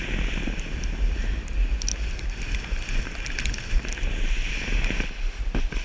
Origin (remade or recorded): recorded